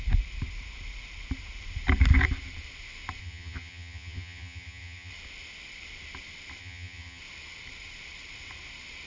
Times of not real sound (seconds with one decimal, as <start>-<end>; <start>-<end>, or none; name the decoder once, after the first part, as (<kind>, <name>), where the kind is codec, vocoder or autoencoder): 3.2-5.1 (vocoder, HiFi-GAN); 6.6-7.2